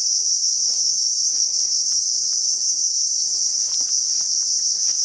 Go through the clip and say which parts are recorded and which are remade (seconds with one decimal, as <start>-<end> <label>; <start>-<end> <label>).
0.0-1.5 remade; 1.5-2.4 recorded; 2.4-3.7 remade; 3.7-4.6 recorded; 4.6-5.0 remade